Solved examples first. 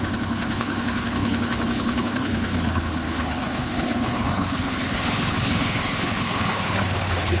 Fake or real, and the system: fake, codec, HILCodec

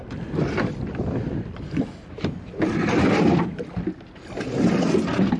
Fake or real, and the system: real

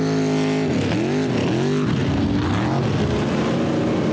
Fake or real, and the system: real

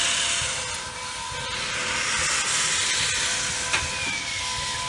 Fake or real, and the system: real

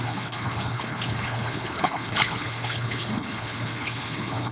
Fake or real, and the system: fake, codec, HILCodec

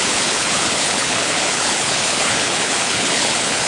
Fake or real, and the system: fake, codec, HILCodec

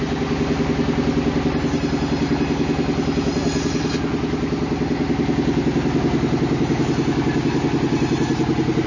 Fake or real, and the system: real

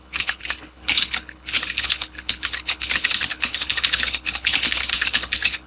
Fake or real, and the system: fake, codec, HILCodec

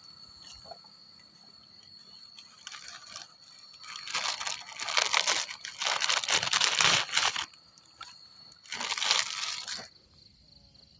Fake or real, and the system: real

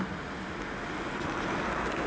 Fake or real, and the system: real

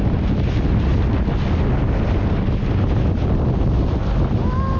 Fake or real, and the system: real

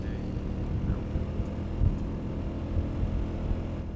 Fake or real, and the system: real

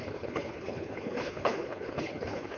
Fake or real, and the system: fake, codec, HILCodec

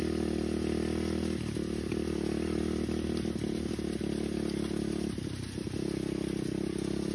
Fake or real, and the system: real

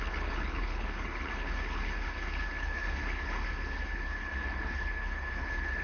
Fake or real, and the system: fake, codec, HILCodec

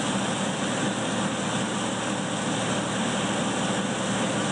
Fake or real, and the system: real